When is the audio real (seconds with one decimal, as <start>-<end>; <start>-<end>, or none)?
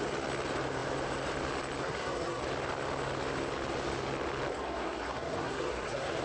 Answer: 0.0-1.8; 2.4-4.5